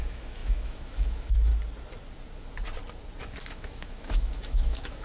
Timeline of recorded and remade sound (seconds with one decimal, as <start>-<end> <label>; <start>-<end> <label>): 0.0-1.5 remade; 1.5-3.2 recorded; 3.2-5.0 remade